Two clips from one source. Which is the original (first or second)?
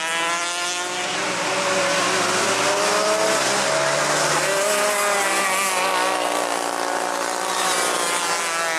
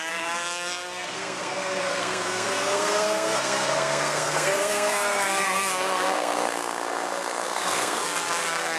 first